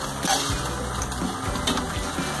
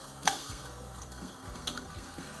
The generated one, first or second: second